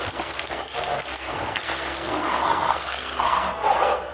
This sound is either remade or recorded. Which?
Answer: remade